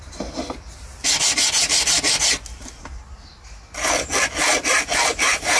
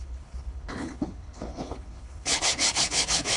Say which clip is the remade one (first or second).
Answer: second